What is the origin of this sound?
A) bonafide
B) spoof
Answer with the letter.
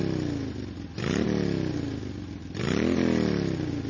A